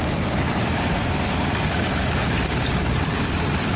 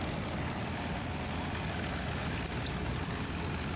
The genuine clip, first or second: second